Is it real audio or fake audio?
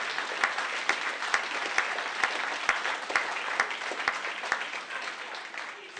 real